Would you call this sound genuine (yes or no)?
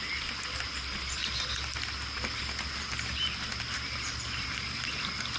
yes